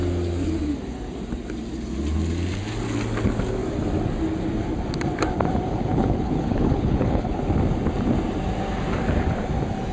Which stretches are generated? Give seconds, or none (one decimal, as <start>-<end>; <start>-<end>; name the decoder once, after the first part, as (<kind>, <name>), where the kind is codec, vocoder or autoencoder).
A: 5.7-7.4 (codec, HILCodec)